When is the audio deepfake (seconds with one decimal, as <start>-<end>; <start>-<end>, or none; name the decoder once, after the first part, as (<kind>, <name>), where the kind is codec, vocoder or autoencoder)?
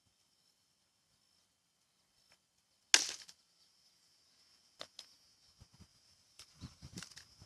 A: 5.9-7.1 (vocoder, BigVGAN v2)